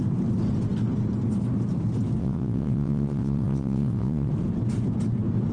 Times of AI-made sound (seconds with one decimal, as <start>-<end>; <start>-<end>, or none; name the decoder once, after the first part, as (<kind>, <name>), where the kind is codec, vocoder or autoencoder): 2.2-4.3 (vocoder, WaveNeXt)